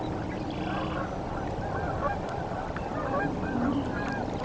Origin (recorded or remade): recorded